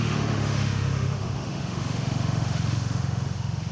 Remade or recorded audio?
remade